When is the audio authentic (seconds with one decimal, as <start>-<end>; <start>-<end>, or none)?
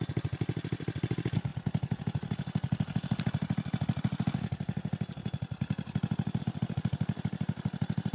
0.0-8.1